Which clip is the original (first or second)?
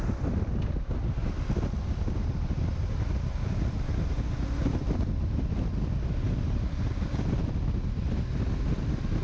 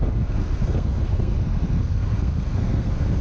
first